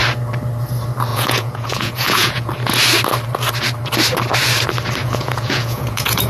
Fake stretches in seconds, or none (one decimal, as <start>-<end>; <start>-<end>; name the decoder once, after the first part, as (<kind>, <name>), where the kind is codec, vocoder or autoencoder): 1.1-2.5 (vocoder, Vocos); 5.0-6.3